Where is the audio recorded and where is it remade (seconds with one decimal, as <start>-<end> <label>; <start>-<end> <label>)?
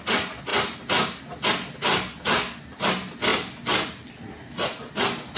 0.0-5.4 recorded